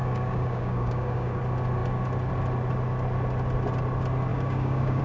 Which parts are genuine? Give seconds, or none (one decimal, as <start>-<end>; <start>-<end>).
1.4-4.3